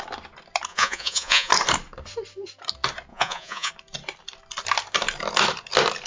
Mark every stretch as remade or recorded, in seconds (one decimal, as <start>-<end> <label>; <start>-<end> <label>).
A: 0.0-0.7 recorded; 0.7-1.5 remade; 1.5-3.1 recorded; 3.1-3.7 remade; 3.7-6.1 recorded